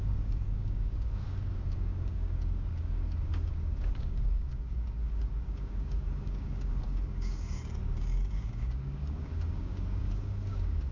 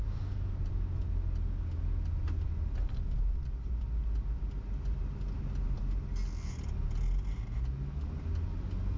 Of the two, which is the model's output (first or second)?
first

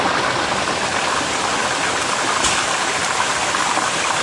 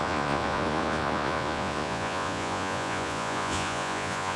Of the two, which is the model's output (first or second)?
second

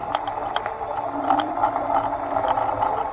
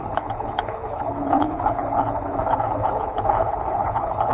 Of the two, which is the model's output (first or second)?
second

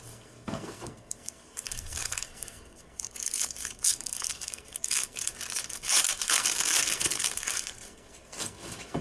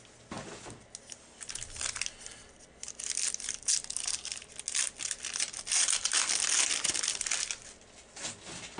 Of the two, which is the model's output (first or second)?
first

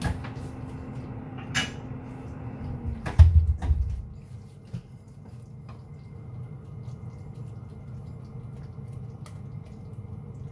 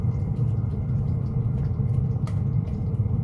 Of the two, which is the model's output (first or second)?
second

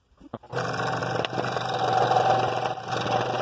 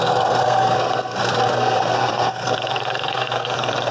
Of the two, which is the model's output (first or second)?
second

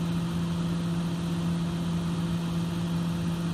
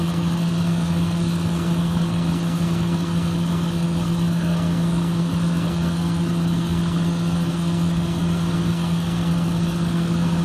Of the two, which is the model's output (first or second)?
second